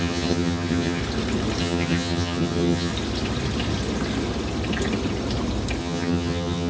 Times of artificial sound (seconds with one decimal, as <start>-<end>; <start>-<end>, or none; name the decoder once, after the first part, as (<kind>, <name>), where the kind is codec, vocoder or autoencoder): 0.0-1.0 (vocoder, HiFi-GAN); 1.6-2.9; 5.8-6.7